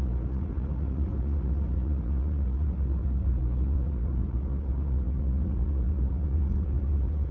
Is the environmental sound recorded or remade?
remade